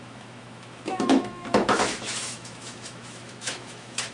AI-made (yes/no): yes